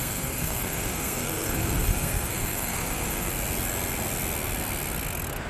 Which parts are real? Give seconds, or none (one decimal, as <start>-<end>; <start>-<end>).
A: 3.3-5.5